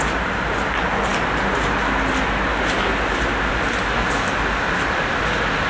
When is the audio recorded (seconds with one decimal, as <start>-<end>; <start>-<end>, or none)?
0.0-5.7